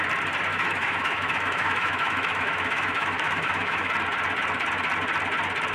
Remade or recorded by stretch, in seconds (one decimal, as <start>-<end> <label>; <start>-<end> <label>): 0.0-0.5 recorded; 0.5-3.9 remade; 3.9-5.7 recorded